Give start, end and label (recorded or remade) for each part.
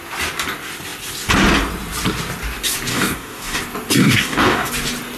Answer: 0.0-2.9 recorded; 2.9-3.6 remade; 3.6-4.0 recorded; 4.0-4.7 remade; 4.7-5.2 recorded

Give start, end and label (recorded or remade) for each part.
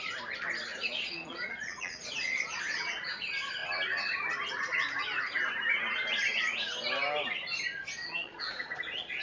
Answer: 0.0-0.7 recorded; 0.7-3.1 remade; 3.1-7.8 recorded; 7.8-9.2 remade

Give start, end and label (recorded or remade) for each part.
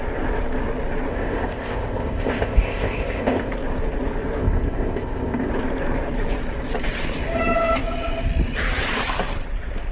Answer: 0.0-1.1 recorded; 1.1-3.5 remade; 3.5-4.4 recorded; 4.4-5.5 remade; 5.5-9.9 recorded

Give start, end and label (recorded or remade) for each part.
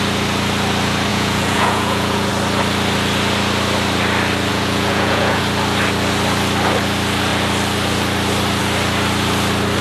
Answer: 0.0-1.1 recorded; 1.1-2.3 remade; 2.3-4.5 recorded; 4.5-5.4 remade; 5.4-9.8 recorded